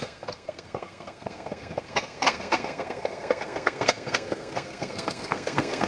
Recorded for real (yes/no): no